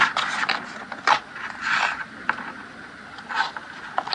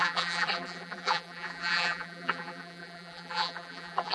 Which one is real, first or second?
first